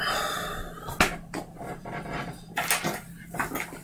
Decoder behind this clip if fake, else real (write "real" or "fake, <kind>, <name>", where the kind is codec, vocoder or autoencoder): real